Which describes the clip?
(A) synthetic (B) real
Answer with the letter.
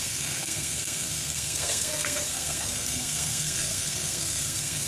A